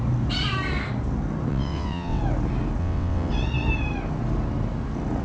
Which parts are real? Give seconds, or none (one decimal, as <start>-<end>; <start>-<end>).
0.0-1.5; 2.2-2.8; 3.3-5.2